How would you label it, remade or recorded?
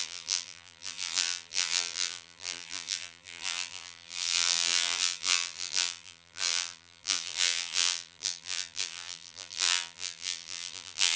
remade